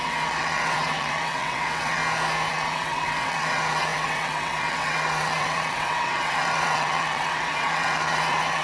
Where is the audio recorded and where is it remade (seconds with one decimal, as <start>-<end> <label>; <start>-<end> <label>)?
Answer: 0.0-2.0 remade; 2.0-2.5 recorded; 2.5-8.6 remade